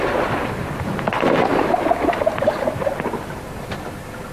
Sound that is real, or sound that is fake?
real